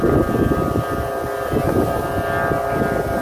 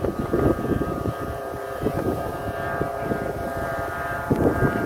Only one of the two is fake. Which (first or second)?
second